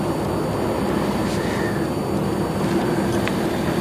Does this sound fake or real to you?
real